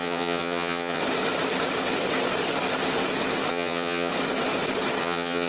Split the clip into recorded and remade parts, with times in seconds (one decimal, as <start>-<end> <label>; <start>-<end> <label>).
0.0-1.0 remade; 1.0-3.5 recorded; 3.5-4.1 remade; 4.1-5.0 recorded; 5.0-5.5 remade